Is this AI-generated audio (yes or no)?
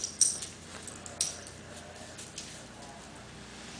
no